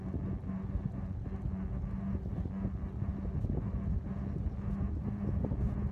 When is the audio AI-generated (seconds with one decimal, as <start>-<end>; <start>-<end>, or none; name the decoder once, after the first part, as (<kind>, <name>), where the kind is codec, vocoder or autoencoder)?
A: none